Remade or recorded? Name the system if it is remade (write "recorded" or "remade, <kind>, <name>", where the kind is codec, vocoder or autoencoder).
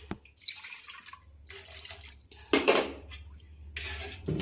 recorded